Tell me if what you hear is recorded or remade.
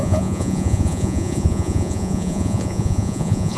remade